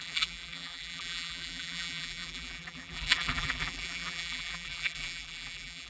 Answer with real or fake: fake